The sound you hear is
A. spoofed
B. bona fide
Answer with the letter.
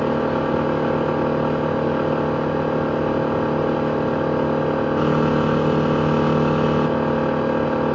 B